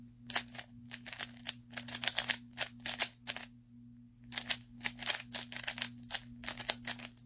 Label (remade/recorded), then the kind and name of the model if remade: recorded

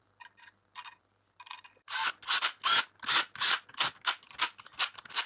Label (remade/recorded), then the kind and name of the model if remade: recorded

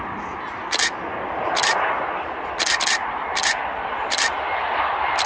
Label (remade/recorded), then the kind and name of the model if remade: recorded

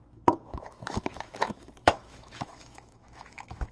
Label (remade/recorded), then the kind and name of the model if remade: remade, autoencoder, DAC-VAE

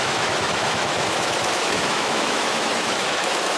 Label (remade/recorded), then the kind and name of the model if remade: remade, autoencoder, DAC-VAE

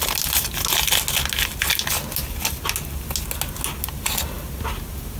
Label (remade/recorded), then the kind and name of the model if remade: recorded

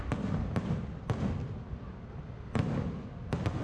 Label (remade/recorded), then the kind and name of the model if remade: recorded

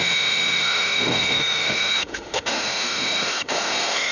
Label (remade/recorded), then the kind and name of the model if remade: remade, autoencoder, DAC-VAE